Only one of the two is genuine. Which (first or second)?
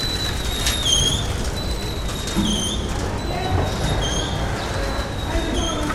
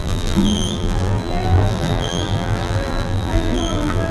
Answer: first